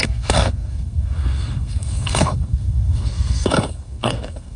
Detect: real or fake fake